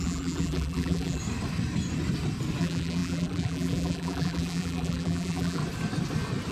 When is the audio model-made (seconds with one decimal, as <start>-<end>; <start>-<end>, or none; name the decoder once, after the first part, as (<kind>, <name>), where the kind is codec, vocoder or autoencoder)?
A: 0.0-1.2 (vocoder, BigVGAN v2); 2.6-5.6